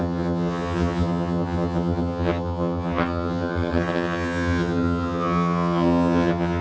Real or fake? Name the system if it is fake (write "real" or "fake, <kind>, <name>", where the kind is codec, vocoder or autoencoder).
fake, vocoder, HiFi-GAN